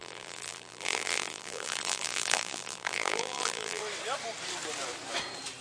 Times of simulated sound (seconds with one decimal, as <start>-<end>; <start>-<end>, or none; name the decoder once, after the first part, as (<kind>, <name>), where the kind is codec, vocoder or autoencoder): 0.0-3.8 (vocoder, BigVGAN v2)